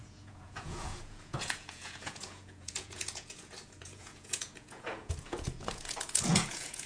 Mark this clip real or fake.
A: fake